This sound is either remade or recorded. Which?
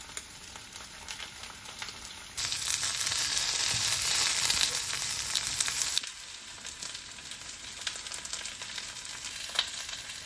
recorded